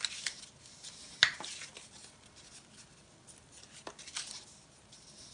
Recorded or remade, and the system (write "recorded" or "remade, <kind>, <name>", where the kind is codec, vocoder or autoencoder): recorded